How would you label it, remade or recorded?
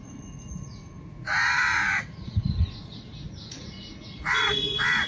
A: remade